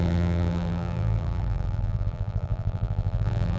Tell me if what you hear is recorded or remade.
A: remade